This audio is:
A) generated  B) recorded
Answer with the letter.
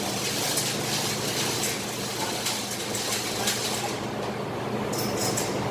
B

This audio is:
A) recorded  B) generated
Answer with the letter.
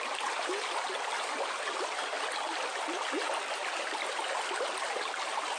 A